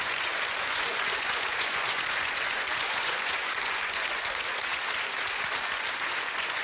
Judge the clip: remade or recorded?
remade